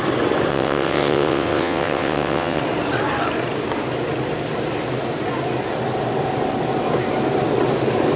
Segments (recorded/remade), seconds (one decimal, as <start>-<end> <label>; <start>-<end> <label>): 0.0-0.5 recorded; 0.5-2.6 remade; 2.6-8.2 recorded